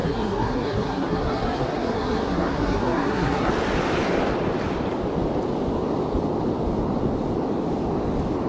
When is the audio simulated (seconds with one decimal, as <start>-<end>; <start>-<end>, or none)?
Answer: 0.0-3.5